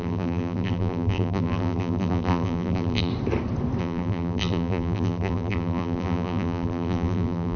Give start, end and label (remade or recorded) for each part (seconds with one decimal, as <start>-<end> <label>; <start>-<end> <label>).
0.0-3.1 remade; 3.1-3.8 recorded; 3.8-7.6 remade